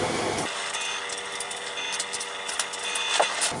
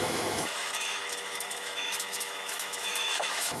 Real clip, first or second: first